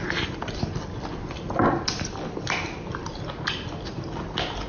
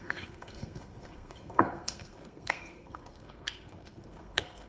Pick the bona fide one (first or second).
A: first